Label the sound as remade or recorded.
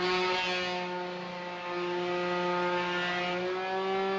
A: recorded